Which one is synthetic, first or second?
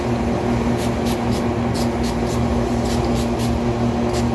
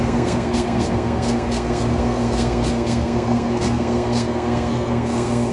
second